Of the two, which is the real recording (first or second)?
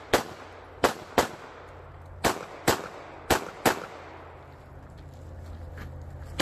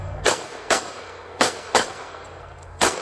first